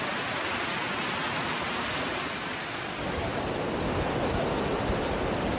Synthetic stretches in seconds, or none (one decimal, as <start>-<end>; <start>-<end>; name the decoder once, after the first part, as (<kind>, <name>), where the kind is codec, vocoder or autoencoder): none